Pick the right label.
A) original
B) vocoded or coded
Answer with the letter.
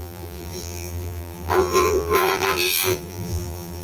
B